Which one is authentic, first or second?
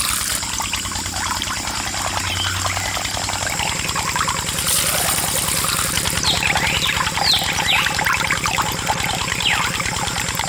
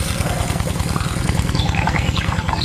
first